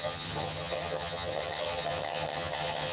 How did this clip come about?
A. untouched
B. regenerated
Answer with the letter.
B